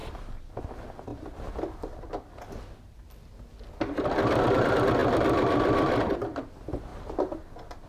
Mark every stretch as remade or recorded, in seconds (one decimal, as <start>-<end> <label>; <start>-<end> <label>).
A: 0.0-0.6 remade; 0.6-1.1 recorded; 1.1-2.9 remade; 2.9-5.0 recorded; 5.0-6.1 remade; 6.1-7.9 recorded